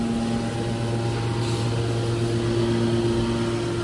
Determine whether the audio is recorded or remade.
recorded